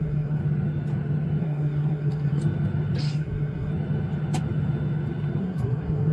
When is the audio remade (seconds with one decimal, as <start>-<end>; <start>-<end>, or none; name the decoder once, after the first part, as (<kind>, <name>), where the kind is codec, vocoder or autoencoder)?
0.0-0.4 (codec, SNAC); 1.4-2.4; 3.0-3.7; 5.4-6.1